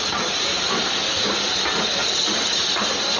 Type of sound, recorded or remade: recorded